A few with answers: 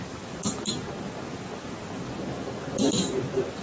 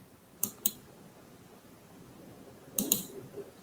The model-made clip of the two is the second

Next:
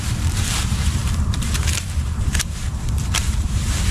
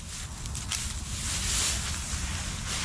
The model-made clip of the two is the first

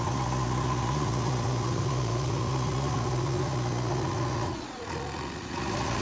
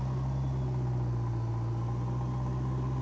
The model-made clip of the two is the first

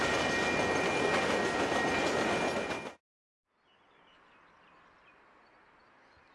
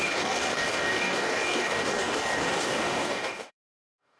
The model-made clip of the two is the second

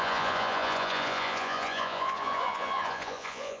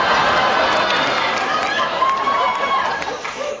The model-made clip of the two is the first